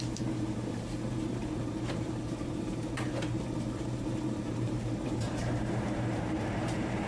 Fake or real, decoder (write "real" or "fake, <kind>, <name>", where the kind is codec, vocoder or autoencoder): fake, vocoder, BigVGAN v2